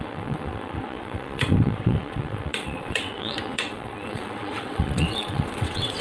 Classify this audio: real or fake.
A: fake